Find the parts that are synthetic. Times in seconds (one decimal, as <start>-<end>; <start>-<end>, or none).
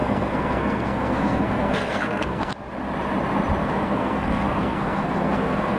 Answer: 0.0-2.5; 3.6-5.8